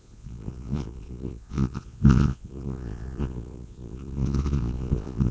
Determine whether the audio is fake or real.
fake